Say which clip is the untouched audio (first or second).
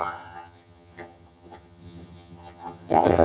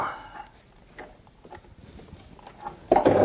second